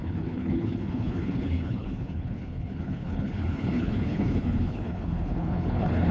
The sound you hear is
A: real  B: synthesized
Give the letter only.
B